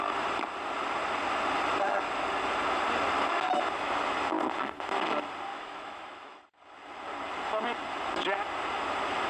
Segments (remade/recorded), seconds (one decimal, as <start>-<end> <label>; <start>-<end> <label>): 0.0-5.5 recorded; 5.5-6.4 remade; 6.4-9.3 recorded